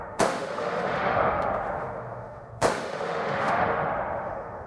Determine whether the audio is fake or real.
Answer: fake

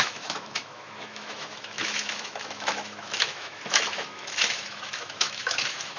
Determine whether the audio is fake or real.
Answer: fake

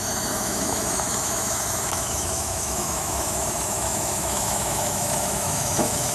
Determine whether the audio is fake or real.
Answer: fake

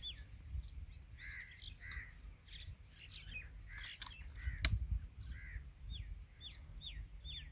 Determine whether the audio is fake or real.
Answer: real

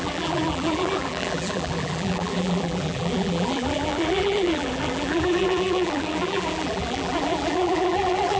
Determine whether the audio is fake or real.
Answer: fake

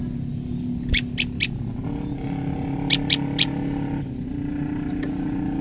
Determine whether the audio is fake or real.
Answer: real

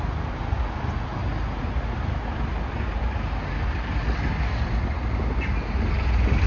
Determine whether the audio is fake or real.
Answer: real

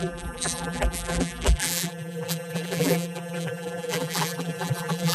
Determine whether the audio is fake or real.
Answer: fake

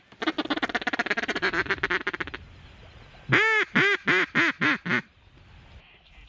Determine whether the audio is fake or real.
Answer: real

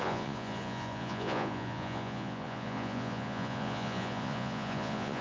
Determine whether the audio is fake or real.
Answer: fake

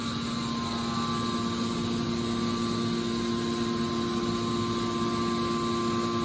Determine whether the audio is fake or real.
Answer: real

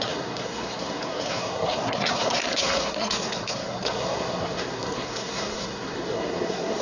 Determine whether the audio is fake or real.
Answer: fake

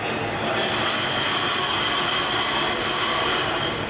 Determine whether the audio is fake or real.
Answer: real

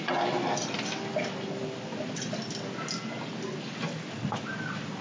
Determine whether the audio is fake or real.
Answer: real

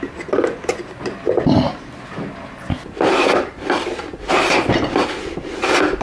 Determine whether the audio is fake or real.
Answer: real